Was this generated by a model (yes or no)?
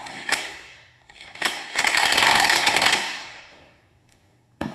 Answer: yes